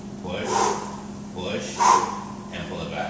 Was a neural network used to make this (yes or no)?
no